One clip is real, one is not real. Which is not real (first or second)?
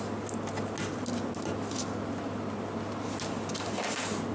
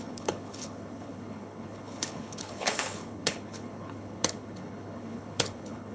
second